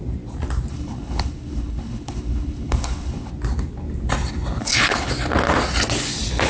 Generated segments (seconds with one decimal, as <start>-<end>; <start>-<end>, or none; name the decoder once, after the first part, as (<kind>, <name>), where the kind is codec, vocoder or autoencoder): 0.7-3.3 (codec, HILCodec); 4.6-5.1